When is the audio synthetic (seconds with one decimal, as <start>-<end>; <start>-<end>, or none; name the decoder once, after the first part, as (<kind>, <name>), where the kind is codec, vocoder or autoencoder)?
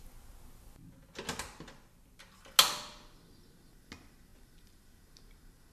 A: none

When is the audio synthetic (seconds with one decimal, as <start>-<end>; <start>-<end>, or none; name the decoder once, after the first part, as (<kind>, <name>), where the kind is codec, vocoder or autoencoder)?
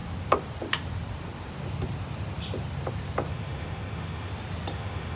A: 3.3-4.3 (autoencoder, DAC-VAE); 4.7-5.2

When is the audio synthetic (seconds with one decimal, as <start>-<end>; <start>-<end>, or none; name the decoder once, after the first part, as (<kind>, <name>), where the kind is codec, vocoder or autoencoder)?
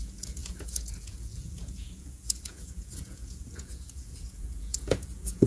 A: 0.0-5.5 (vocoder, Vocos)